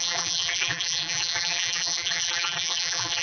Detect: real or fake fake